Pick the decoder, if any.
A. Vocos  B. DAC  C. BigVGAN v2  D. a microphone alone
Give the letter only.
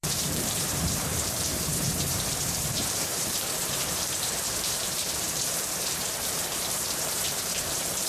C